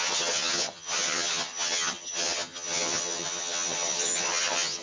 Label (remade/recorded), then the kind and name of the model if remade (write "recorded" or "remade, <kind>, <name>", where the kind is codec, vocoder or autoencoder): remade, vocoder, HiFi-GAN